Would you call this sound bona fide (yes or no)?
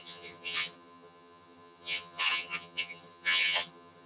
no